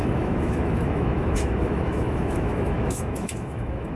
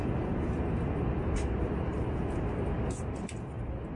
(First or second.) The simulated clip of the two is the first